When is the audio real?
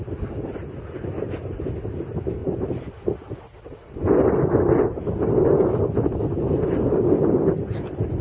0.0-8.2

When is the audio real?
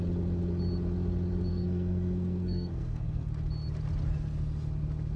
0.0-1.5; 3.3-5.2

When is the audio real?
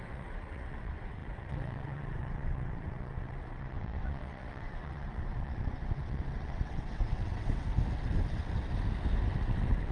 7.7-9.4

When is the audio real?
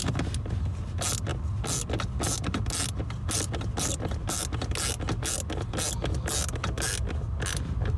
0.0-8.0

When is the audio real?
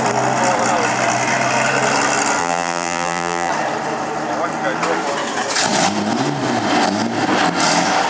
0.0-2.4; 3.5-8.1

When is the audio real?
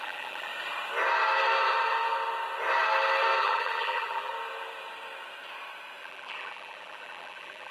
0.5-3.4; 4.3-6.0